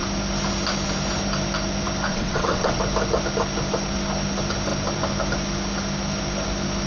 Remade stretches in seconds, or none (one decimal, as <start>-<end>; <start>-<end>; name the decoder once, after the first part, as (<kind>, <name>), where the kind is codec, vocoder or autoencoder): 2.1-2.8 (vocoder, WaveNeXt)